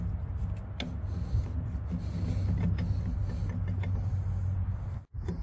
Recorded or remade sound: recorded